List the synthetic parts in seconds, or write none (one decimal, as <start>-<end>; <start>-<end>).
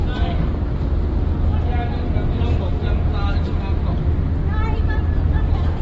none